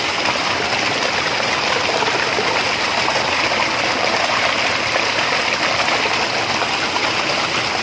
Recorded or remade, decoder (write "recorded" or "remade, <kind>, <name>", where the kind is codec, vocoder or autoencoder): recorded